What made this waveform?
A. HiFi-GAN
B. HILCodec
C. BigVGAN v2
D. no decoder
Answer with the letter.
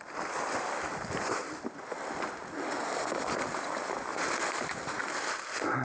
D